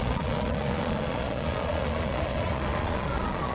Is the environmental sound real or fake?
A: fake